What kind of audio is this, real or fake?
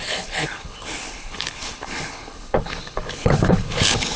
fake